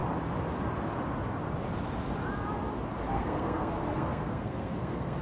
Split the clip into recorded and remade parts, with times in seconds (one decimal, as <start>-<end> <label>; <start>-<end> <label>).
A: 0.0-3.1 recorded; 3.1-5.2 remade